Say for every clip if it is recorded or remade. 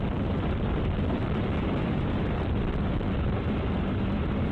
remade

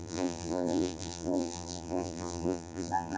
remade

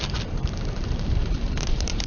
remade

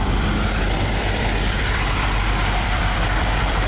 remade